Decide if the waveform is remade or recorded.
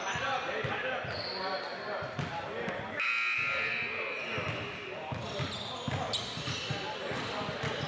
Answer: recorded